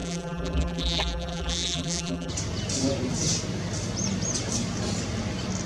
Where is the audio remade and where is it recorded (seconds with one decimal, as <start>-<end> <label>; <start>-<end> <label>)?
0.0-2.3 remade; 2.3-5.7 recorded